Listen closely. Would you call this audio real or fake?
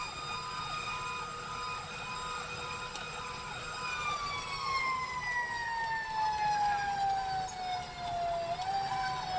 real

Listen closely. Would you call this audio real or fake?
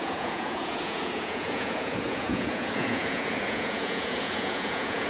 fake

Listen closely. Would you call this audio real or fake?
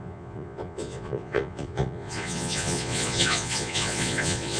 fake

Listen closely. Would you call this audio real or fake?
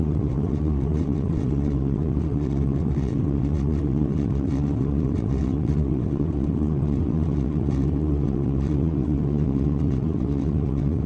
fake